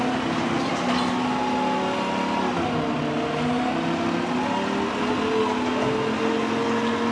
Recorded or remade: recorded